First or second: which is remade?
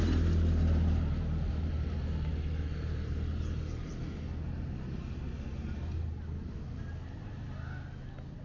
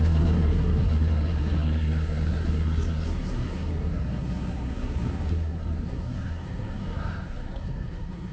second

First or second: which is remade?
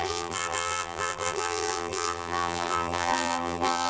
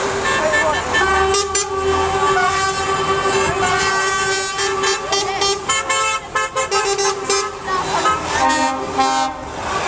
first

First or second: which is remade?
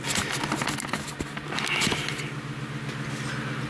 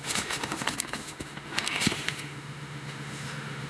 second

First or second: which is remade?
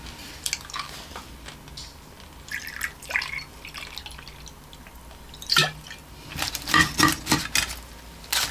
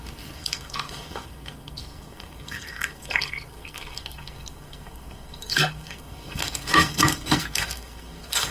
second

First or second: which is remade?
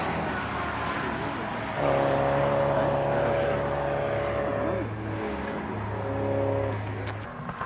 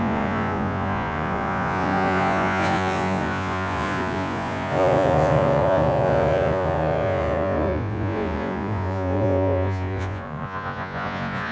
second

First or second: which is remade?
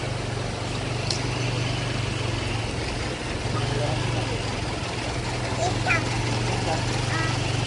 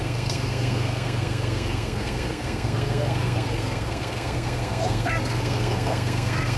second